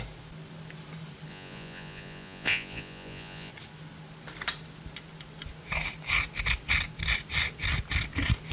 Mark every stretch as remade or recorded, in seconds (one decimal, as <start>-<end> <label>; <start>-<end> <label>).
0.0-1.3 recorded; 1.3-3.5 remade; 3.5-8.5 recorded